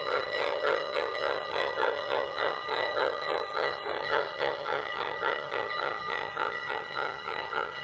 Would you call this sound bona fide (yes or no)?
no